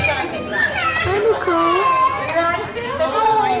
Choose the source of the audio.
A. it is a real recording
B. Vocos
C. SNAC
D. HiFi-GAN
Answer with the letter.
A